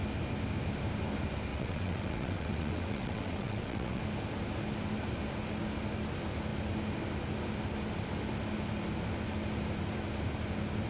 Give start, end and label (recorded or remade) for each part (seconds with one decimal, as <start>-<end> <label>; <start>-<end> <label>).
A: 0.0-1.5 recorded; 1.5-4.0 remade; 4.0-10.9 recorded